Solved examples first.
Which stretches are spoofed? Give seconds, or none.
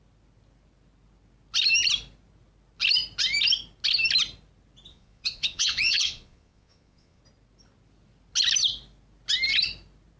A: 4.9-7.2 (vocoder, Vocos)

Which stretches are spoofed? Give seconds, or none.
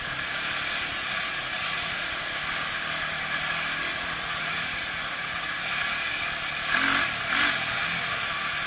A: 0.9-2.2 (vocoder, Vocos); 3.9-5.8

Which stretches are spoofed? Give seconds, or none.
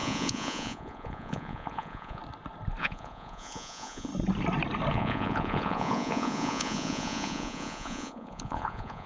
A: 0.0-2.2 (vocoder, Vocos); 2.8-4.1; 4.9-9.1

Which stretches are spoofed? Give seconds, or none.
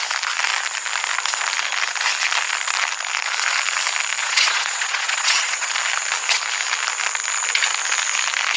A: 4.2-5.7 (vocoder, Vocos)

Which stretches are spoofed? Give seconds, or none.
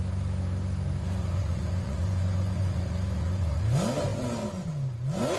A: 1.0-3.6 (vocoder, Vocos)